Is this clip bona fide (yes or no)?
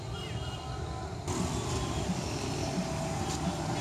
yes